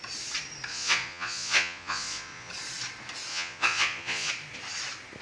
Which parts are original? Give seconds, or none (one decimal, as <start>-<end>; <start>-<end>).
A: 0.0-0.7; 2.5-3.3; 4.3-5.2